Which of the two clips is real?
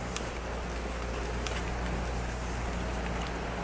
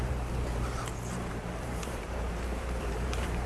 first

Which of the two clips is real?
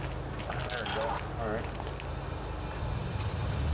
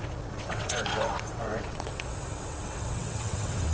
first